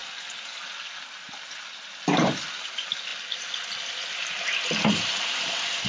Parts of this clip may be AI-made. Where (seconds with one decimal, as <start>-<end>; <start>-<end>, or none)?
none